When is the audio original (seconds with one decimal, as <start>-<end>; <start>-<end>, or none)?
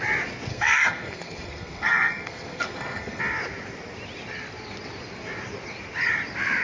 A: 0.0-0.5; 3.2-6.6